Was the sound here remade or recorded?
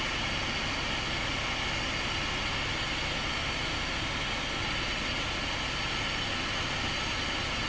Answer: recorded